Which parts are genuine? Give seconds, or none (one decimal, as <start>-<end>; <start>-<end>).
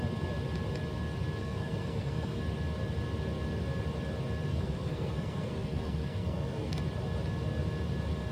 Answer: 0.0-1.4; 2.4-4.5; 6.8-8.3